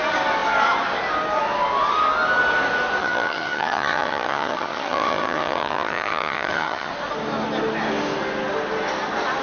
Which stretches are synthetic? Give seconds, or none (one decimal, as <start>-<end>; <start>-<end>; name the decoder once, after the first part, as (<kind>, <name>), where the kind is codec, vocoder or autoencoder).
3.0-6.9 (vocoder, HiFi-GAN)